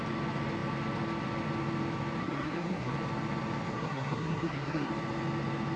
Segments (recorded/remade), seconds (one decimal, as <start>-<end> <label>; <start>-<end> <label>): 0.0-2.2 recorded; 2.2-2.9 remade; 2.9-3.7 recorded; 3.7-4.9 remade; 4.9-5.8 recorded